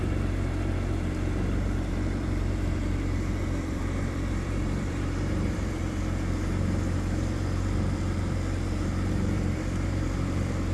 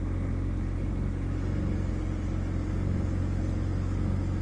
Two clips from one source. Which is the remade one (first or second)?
first